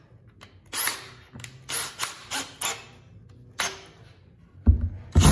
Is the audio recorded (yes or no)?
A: yes